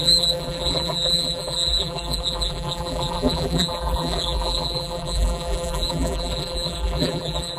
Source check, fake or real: fake